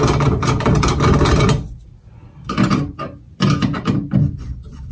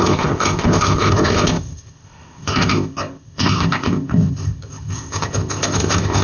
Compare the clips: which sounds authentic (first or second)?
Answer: first